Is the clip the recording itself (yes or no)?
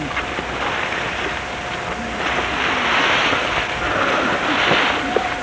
yes